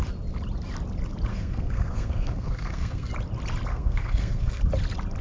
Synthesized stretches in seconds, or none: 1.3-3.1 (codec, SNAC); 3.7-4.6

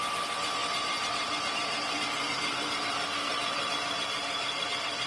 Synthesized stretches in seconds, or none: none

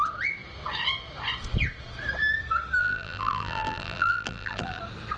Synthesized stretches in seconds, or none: 2.8-4.8 (vocoder, BigVGAN v2)

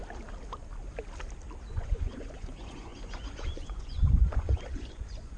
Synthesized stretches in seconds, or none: 1.7-5.4 (vocoder, Vocos)

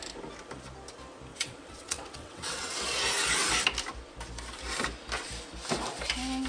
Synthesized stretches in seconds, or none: 1.3-2.7 (vocoder, WaveNeXt)

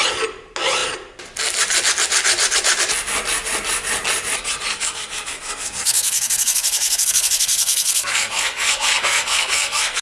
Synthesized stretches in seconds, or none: 4.7-10.0 (codec, SNAC)

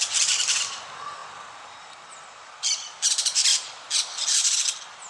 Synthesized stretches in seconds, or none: 0.0-5.1 (vocoder, BigVGAN v2)